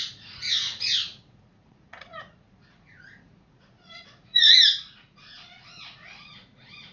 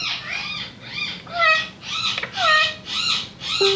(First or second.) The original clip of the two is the second